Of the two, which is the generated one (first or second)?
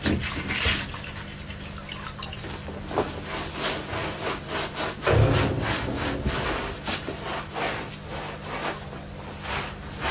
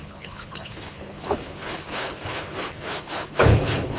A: second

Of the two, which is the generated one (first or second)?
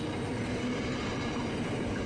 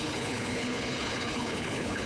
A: second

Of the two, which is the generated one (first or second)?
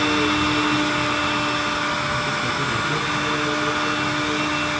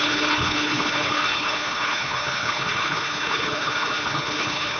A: second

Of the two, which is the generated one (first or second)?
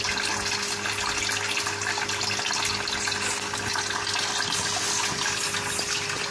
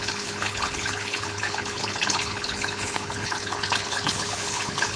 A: second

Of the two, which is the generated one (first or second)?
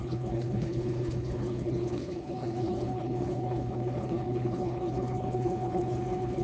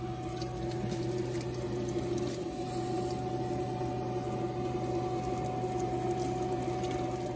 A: first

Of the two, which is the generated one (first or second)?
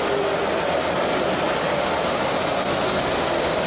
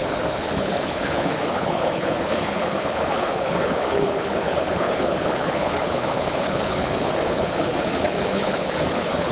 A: second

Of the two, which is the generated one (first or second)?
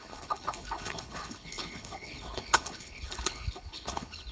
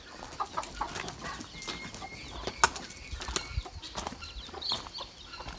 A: first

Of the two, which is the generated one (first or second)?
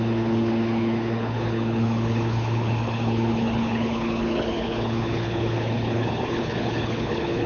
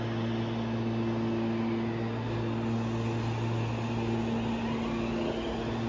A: first